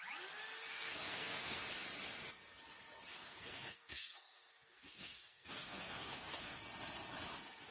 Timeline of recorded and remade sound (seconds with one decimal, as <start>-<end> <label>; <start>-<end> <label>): 0.0-0.7 recorded; 0.7-1.6 remade; 1.6-3.1 recorded; 3.1-6.6 remade; 6.6-7.7 recorded